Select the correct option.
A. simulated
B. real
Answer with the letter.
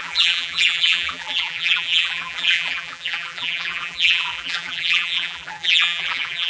A